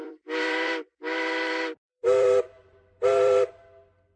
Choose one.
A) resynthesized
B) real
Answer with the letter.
A